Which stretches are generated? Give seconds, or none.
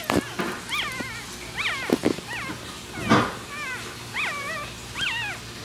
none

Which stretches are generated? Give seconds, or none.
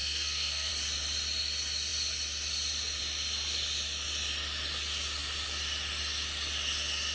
0.0-0.7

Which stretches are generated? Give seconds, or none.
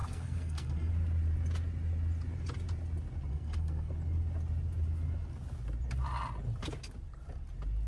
0.0-0.9; 3.3-3.9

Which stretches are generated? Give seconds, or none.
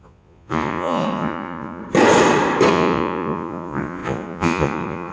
0.0-1.8; 2.7-5.1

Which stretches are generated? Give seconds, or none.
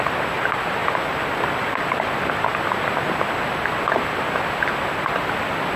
0.0-0.8; 1.8-2.5; 4.9-5.8